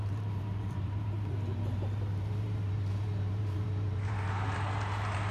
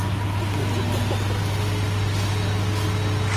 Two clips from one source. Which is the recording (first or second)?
second